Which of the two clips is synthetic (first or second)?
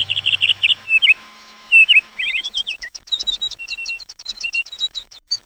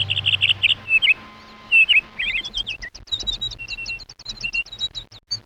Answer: first